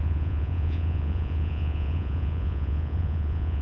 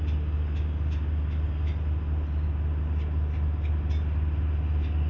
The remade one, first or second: first